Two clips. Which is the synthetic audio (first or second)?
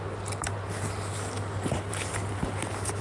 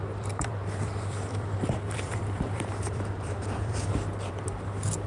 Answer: second